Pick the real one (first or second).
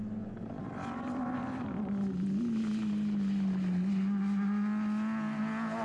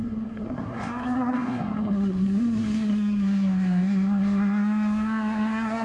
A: first